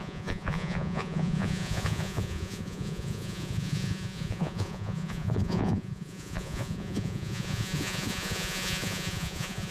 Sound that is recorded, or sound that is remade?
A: remade